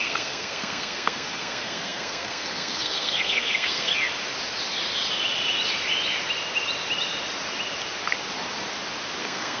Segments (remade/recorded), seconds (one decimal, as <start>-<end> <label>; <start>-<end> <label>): 0.0-3.9 remade; 3.9-9.2 recorded; 9.2-9.6 remade